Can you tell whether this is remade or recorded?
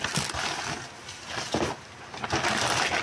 recorded